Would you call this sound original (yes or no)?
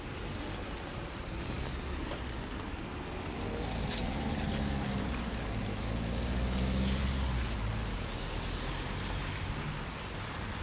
yes